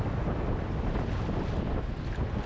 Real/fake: real